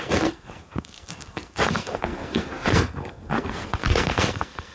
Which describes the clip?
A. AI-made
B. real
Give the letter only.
A